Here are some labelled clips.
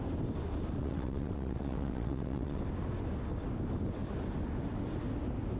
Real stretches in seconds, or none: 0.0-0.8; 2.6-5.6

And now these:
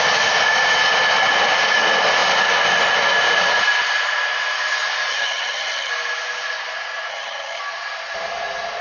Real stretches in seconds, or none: 0.0-5.1; 5.9-7.1; 7.6-8.8